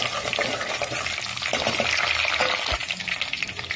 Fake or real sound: real